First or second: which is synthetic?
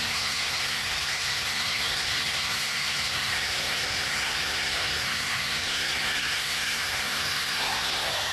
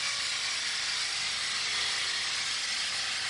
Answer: first